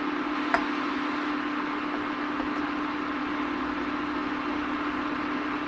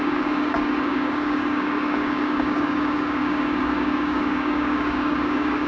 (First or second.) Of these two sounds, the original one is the first